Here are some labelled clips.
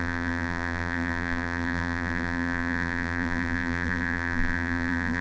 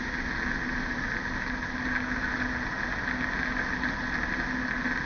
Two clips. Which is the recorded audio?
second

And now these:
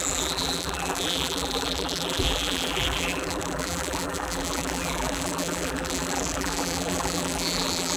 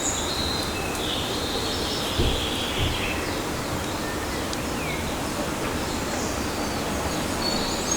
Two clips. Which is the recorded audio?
second